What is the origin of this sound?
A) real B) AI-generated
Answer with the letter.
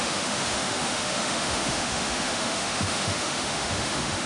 B